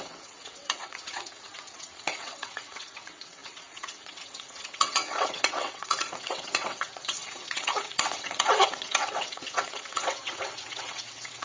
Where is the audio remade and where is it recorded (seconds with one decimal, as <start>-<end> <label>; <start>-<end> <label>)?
0.0-11.4 remade